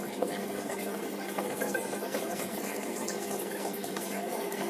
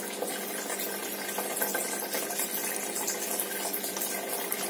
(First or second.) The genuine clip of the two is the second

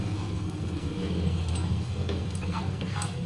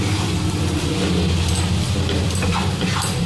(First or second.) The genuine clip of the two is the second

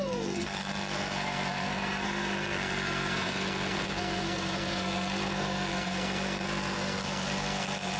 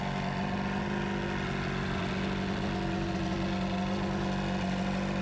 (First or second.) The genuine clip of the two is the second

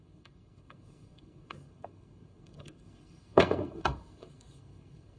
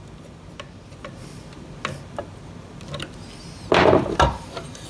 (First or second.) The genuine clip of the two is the second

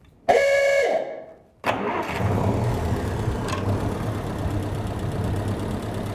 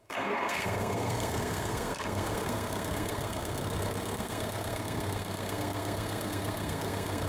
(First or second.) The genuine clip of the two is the first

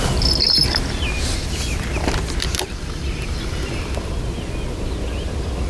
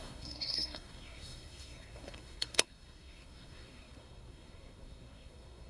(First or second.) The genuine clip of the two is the first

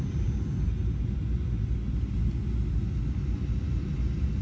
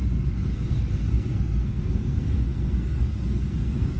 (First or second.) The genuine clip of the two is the first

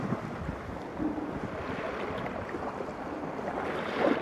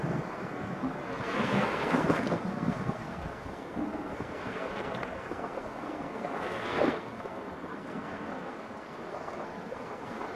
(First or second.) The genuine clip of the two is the first